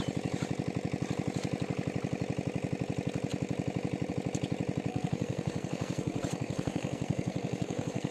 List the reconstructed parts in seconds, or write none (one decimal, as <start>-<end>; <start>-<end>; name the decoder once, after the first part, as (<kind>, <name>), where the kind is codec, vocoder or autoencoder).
4.9-8.1 (codec, SNAC)

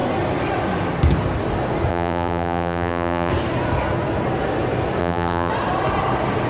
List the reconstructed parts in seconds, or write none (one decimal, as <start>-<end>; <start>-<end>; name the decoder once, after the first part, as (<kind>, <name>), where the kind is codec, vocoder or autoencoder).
1.9-3.3 (vocoder, BigVGAN v2); 5.0-5.5